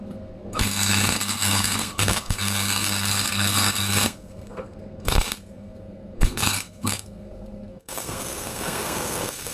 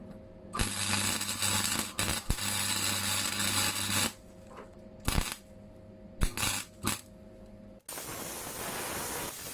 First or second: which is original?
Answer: second